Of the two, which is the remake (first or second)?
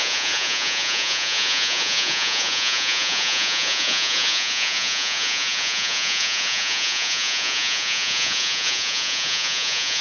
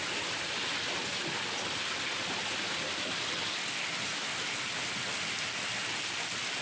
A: first